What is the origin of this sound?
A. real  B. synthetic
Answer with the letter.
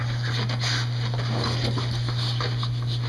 A